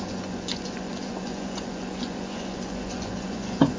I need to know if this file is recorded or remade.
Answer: remade